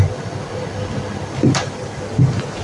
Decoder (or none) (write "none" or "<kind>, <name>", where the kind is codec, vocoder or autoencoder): none